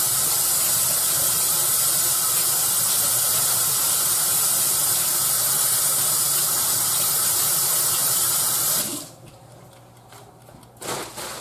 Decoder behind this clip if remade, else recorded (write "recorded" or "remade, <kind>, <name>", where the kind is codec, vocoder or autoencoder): recorded